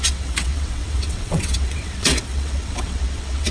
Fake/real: fake